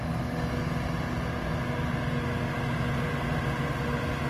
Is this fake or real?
real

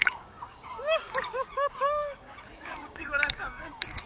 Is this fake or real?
fake